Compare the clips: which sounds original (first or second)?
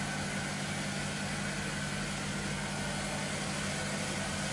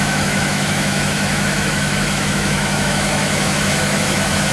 first